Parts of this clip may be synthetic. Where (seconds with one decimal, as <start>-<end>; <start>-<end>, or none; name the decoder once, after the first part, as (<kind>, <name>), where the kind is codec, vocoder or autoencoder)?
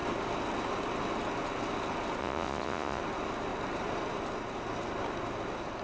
2.2-3.0 (vocoder, Vocos)